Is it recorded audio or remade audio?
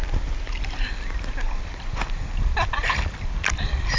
recorded